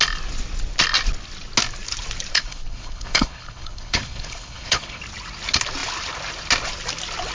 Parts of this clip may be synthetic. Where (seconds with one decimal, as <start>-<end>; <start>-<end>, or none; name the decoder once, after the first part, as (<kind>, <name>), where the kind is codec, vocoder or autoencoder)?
2.3-5.0 (codec, HILCodec)